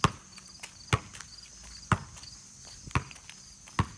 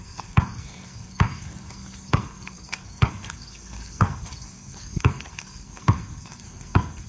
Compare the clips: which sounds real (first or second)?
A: first